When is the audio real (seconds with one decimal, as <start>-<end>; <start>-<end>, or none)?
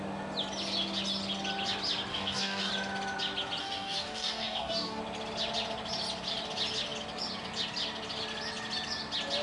0.0-2.1; 2.7-3.6; 5.0-9.4